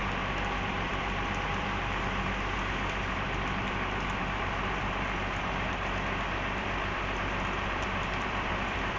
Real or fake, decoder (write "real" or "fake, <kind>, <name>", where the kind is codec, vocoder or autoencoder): fake, vocoder, BigVGAN v2